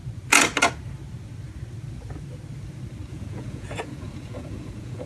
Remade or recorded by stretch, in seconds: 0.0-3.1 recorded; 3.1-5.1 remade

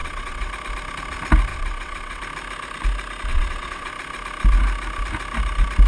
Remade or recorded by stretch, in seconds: 0.0-0.5 remade; 0.5-1.5 recorded; 1.5-2.2 remade; 2.2-3.3 recorded; 3.3-3.9 remade; 3.9-5.9 recorded